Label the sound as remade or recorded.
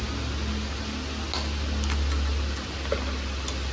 recorded